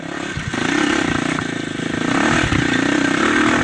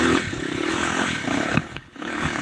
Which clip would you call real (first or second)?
first